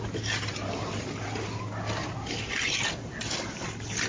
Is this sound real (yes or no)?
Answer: yes